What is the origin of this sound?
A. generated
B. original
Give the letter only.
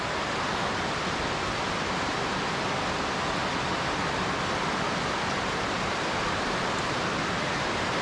B